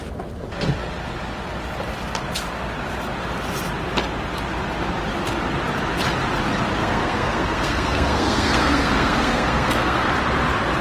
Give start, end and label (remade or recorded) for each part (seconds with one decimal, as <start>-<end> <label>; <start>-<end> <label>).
0.0-6.8 recorded; 6.8-10.1 remade; 10.1-10.8 recorded